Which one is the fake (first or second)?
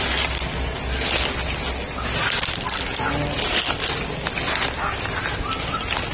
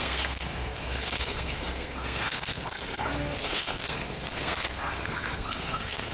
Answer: second